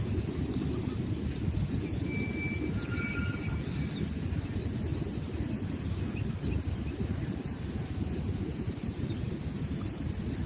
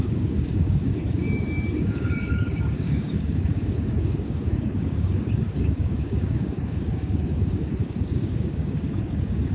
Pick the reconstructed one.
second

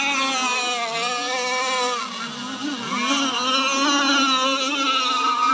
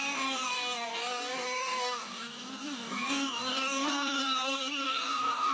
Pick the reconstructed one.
second